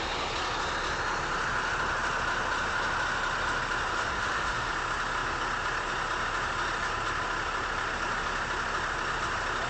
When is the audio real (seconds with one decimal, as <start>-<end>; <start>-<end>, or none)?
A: 0.0-3.9; 4.7-9.7